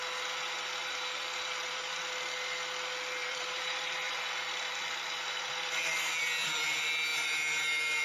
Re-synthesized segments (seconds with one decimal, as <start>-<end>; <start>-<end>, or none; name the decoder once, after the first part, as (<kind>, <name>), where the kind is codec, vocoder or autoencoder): 0.8-2.0 (vocoder, BigVGAN v2); 3.2-4.1